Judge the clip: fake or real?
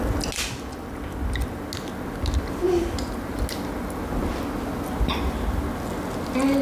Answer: real